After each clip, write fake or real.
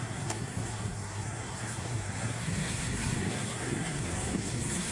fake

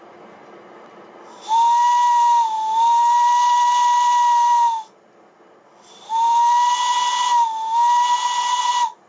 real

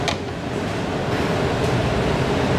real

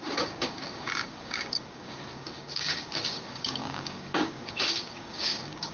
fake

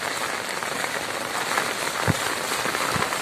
real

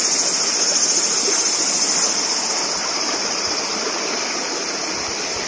real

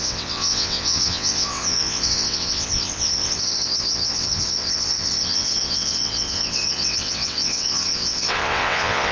fake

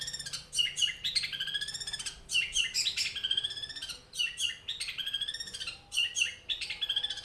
real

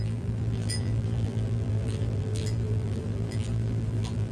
fake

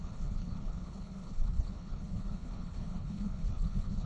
fake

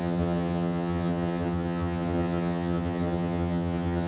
fake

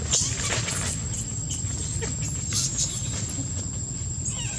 real